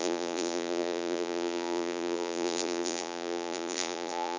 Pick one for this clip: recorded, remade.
remade